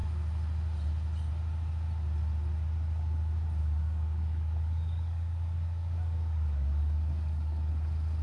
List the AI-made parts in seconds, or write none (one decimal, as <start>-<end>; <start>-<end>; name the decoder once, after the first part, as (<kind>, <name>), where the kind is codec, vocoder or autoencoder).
3.6-7.7 (codec, DAC)